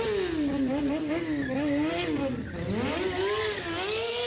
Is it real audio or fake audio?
real